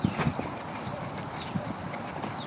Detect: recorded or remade recorded